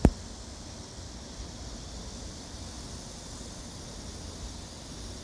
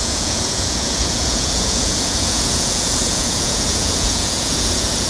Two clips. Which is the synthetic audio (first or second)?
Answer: second